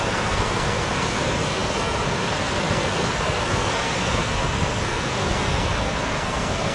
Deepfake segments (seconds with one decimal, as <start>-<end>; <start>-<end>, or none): 0.0-6.7